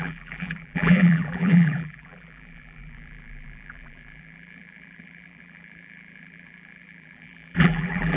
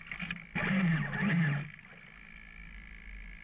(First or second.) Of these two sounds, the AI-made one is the first